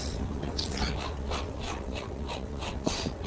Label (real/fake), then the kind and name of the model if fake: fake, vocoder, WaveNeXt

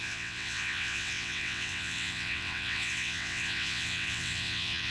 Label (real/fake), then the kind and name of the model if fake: fake, vocoder, WaveNeXt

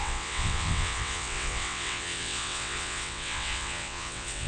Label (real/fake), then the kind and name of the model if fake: fake, vocoder, WaveNeXt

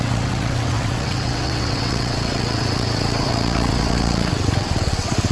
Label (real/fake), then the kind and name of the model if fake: fake, vocoder, WaveNeXt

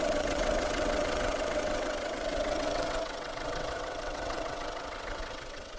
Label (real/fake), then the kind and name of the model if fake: fake, vocoder, WaveNeXt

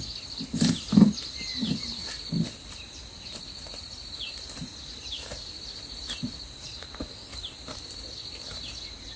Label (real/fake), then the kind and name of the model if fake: real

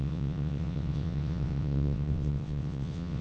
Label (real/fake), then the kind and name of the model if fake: fake, vocoder, WaveNeXt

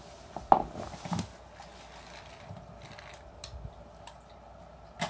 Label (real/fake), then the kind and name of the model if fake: real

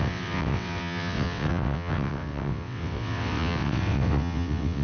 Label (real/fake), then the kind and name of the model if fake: fake, vocoder, WaveNeXt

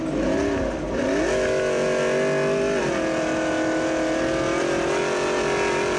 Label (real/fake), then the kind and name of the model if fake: real